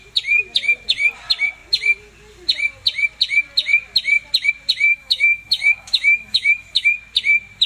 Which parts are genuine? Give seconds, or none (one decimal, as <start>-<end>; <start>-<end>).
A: 0.0-4.9; 6.9-7.7